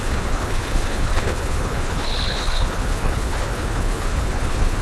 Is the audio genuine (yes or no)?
no